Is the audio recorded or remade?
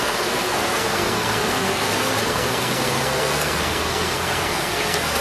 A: remade